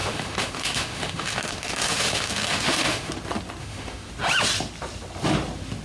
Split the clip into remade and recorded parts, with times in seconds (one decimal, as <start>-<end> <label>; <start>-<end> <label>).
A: 0.0-3.1 remade; 3.1-3.6 recorded; 3.6-4.1 remade; 4.1-5.8 recorded